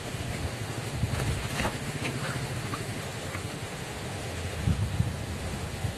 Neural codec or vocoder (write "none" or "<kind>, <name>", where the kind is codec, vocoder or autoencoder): autoencoder, DAC-VAE